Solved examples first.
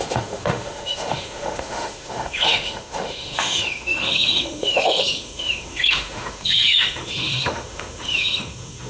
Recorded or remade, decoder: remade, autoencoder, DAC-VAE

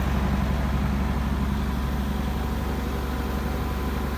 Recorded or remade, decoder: recorded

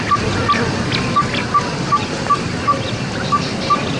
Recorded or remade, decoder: recorded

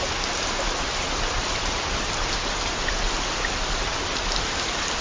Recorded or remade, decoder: recorded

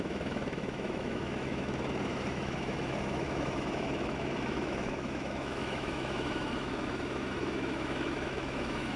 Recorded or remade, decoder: remade, autoencoder, DAC-VAE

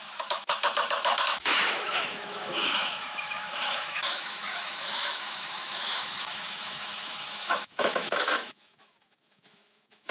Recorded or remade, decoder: remade, autoencoder, DAC-VAE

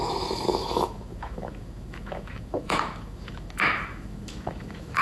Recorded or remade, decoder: remade, autoencoder, DAC-VAE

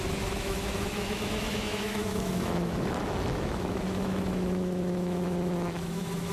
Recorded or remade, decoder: remade, autoencoder, DAC-VAE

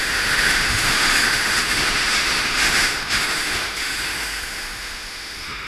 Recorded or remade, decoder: remade, autoencoder, DAC-VAE